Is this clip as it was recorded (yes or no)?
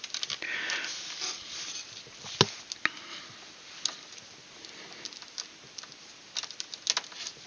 yes